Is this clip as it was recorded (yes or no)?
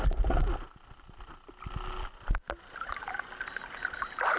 yes